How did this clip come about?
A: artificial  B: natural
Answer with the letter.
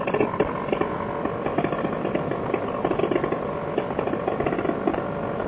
B